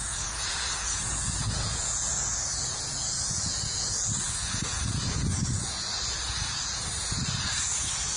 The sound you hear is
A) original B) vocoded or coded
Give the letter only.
B